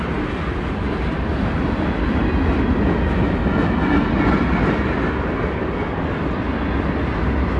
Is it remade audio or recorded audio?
recorded